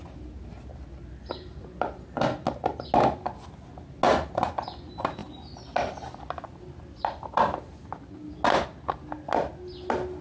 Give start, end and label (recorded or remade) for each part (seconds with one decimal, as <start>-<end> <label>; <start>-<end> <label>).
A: 0.0-10.2 recorded